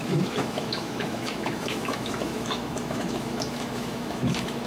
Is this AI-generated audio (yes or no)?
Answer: yes